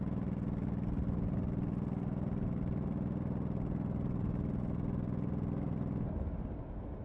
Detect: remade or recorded recorded